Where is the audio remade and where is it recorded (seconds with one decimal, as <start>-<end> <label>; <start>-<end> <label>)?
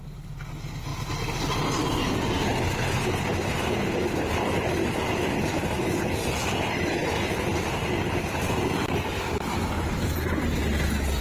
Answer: 0.0-11.2 recorded